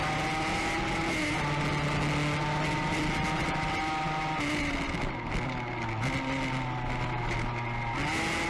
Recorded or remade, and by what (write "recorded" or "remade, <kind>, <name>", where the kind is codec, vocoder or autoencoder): recorded